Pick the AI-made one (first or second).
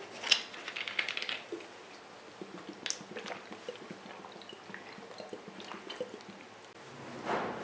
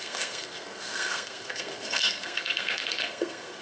second